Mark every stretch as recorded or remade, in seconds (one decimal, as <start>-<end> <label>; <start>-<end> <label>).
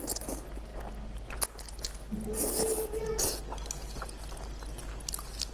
0.0-5.5 recorded